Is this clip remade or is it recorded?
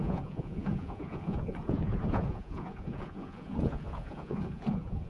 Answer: remade